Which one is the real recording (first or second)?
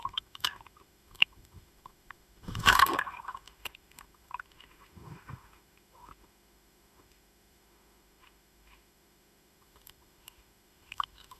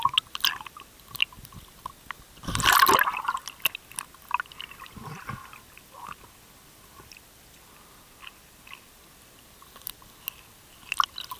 second